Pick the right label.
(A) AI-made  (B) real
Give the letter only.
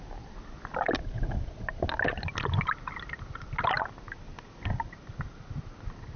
B